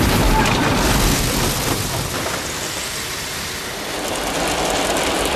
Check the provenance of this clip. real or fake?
real